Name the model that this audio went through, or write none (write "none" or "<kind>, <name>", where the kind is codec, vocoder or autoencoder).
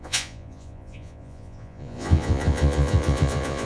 vocoder, Vocos